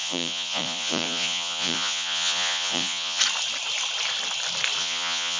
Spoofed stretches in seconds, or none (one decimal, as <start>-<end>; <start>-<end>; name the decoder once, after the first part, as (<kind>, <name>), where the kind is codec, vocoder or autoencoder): 0.0-3.2 (vocoder, Vocos); 4.8-5.4